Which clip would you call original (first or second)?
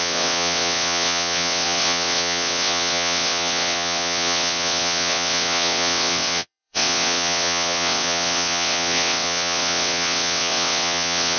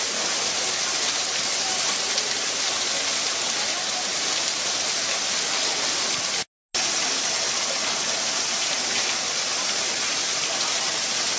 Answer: second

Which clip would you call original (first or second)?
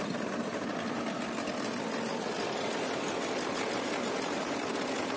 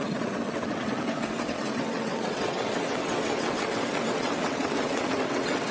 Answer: first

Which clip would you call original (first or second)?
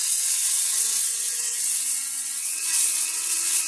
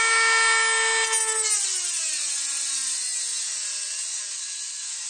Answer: second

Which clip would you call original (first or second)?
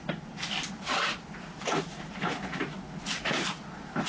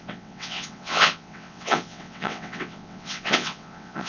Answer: first